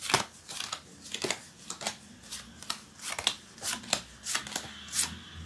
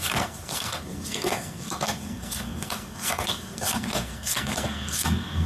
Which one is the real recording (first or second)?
first